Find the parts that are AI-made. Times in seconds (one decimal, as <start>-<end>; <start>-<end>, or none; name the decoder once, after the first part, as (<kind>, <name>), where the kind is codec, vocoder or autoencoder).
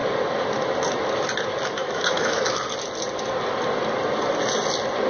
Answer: 1.8-2.4 (autoencoder, DAC-VAE)